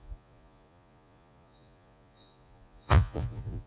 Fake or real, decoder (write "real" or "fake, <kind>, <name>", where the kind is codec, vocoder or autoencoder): fake, vocoder, Vocos